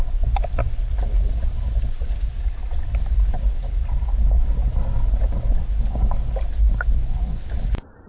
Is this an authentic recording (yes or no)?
yes